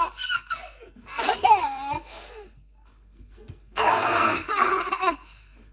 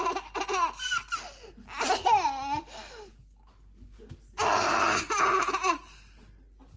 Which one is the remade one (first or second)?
first